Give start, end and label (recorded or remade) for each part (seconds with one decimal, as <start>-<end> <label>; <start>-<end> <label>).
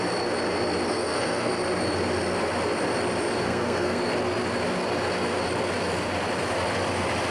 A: 0.0-0.9 recorded; 0.9-1.5 remade; 1.5-3.4 recorded; 3.4-4.0 remade; 4.0-7.3 recorded